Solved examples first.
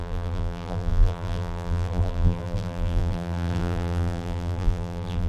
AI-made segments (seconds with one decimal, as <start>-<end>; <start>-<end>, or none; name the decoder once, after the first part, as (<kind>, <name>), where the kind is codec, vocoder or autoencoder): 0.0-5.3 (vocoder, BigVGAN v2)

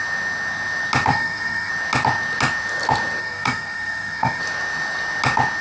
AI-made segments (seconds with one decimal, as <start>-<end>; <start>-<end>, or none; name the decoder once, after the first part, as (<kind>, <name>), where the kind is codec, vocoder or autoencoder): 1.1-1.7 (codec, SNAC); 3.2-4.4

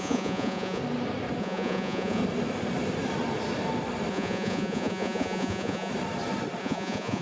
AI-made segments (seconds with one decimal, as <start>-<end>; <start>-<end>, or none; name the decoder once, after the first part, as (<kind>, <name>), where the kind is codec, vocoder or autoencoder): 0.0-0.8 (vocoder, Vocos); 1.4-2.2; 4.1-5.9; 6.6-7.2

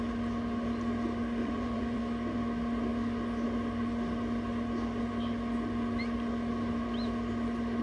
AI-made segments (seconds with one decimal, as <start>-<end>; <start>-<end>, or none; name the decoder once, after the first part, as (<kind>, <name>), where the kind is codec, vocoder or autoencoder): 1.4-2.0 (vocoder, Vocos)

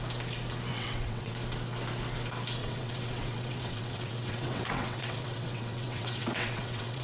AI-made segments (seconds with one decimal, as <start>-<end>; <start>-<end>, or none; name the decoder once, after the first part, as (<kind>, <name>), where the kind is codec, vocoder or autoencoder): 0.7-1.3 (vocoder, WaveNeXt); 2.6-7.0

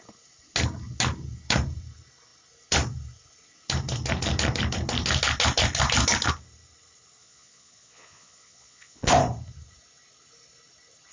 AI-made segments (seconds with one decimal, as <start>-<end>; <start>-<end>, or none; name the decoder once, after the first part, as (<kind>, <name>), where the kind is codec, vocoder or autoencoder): 7.2-9.1 (vocoder, Vocos)